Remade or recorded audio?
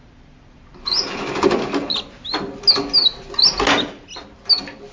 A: recorded